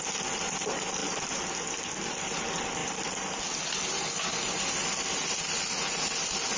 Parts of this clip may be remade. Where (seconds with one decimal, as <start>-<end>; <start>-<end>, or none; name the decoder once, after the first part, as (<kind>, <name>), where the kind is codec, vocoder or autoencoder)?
none